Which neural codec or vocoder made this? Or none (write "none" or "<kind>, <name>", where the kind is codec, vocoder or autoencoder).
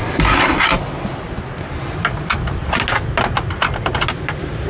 none